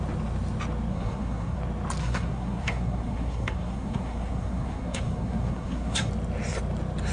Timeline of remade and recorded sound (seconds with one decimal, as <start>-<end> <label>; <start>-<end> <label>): 0.0-0.9 recorded; 0.9-1.6 remade; 1.6-2.0 recorded; 2.0-6.1 remade; 6.1-7.1 recorded